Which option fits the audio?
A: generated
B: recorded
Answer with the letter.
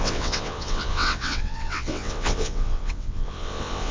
A